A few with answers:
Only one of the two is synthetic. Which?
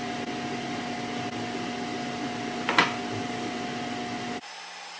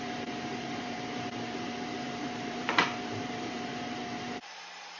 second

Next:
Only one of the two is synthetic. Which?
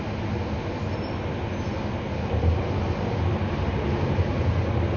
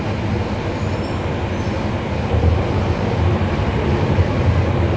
second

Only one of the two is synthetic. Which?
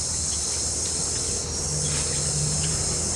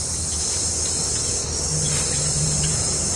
second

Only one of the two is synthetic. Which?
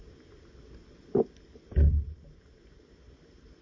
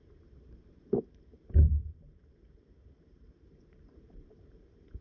second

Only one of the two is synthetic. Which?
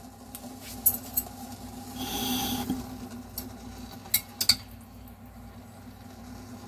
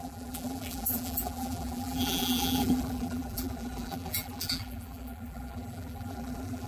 second